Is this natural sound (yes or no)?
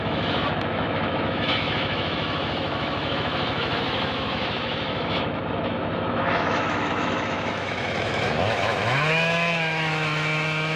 no